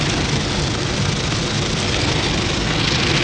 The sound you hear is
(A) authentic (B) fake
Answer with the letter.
A